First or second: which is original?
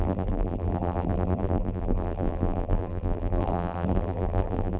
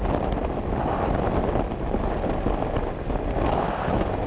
second